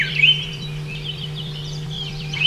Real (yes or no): no